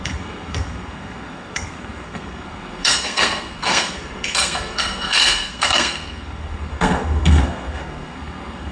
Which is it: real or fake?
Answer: fake